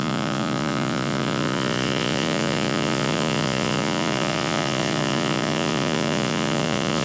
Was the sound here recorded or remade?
remade